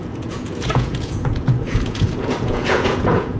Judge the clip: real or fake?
fake